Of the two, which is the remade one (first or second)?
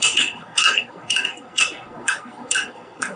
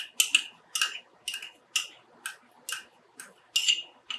first